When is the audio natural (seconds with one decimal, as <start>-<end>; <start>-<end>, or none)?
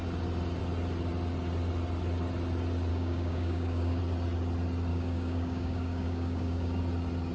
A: 0.0-2.9; 4.0-4.9; 6.8-7.3